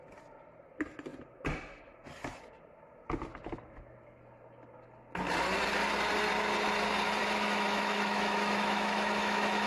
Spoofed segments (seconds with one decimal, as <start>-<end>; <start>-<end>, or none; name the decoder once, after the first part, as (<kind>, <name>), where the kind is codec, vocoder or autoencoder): 7.2-9.7 (autoencoder, DAC-VAE)